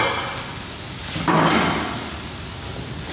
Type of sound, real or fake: real